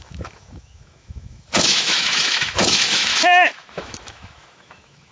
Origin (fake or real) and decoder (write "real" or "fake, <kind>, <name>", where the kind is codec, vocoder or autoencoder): fake, autoencoder, DAC-VAE